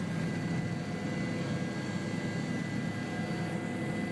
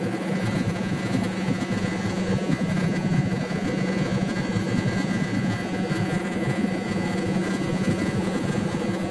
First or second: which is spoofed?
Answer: second